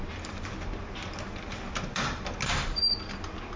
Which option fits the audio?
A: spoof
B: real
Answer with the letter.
B